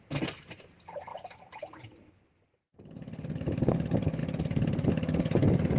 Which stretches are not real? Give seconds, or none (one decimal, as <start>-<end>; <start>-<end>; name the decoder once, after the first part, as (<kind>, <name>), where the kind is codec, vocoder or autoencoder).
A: none